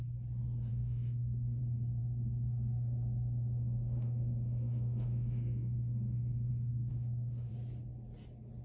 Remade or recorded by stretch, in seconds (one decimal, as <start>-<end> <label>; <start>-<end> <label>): 0.0-0.7 recorded; 0.7-1.6 remade; 1.6-2.0 recorded; 2.0-6.5 remade; 6.5-6.9 recorded; 6.9-7.5 remade; 7.5-8.6 recorded